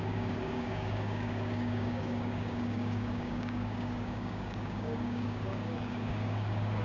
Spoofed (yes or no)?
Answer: yes